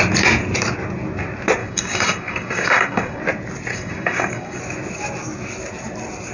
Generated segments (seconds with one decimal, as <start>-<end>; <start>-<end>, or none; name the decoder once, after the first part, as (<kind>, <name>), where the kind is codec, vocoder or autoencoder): 1.6-3.2 (codec, DAC); 3.7-4.6

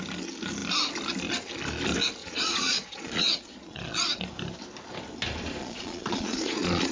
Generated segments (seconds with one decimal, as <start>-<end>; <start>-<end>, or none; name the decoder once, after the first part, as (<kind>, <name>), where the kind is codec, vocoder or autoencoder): 2.2-4.2 (vocoder, Vocos); 5.6-6.9

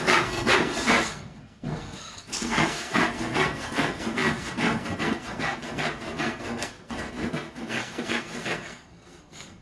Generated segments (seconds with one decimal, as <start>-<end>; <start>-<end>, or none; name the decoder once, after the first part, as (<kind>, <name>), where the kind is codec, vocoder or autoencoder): 0.0-9.6 (codec, SNAC)

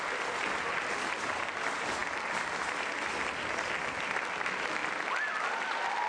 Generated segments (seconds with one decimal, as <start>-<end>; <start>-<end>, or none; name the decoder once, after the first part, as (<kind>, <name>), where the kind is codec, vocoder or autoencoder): none

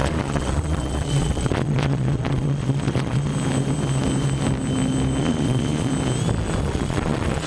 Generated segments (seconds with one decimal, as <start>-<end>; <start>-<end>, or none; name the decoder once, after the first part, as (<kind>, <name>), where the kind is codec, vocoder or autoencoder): 0.0-3.3 (vocoder, Vocos); 5.2-5.9; 6.6-7.5

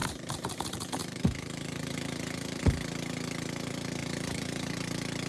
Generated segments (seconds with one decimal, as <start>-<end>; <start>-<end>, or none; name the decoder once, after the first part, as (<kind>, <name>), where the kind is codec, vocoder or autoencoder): 0.0-2.6 (vocoder, BigVGAN v2); 4.0-4.7